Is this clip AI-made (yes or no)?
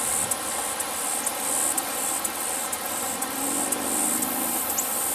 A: no